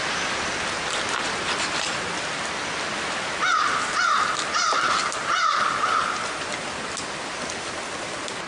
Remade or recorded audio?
recorded